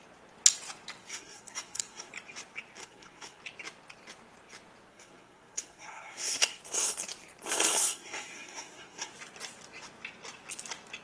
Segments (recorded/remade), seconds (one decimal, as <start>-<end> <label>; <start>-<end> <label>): 0.0-1.0 recorded; 1.0-2.1 remade; 2.1-2.8 recorded; 2.8-3.4 remade; 3.4-4.9 recorded; 4.9-6.6 remade; 6.6-7.8 recorded; 7.8-9.1 remade; 9.1-11.0 recorded